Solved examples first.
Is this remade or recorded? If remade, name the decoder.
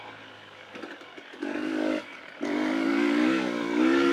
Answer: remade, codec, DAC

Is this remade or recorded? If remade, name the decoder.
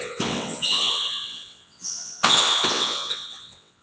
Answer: remade, vocoder, WaveNeXt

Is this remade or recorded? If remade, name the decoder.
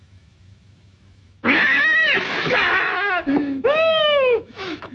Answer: remade, autoencoder, DAC-VAE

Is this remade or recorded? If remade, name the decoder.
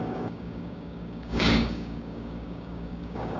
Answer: remade, codec, DAC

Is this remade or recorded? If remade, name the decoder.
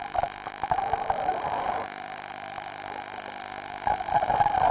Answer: remade, vocoder, BigVGAN v2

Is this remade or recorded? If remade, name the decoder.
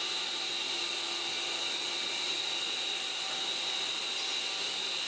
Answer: recorded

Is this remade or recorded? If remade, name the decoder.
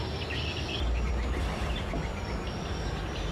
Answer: recorded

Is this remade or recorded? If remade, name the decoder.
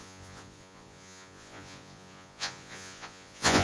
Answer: remade, vocoder, Vocos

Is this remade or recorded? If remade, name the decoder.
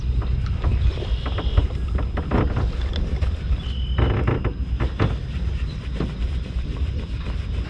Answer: recorded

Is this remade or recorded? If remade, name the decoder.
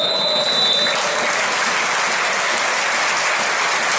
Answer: recorded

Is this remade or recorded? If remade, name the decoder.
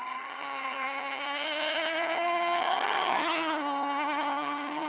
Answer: remade, vocoder, HiFi-GAN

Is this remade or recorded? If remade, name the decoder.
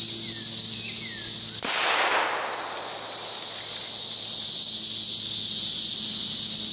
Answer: recorded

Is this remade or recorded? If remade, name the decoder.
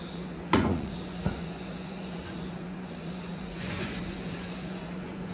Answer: remade, vocoder, Vocos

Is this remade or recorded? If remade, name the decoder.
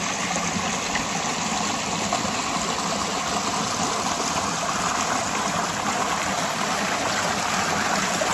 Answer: recorded